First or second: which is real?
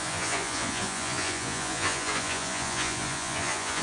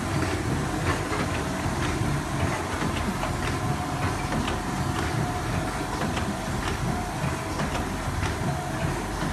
second